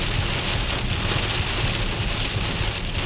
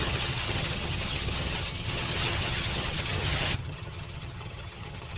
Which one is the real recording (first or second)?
first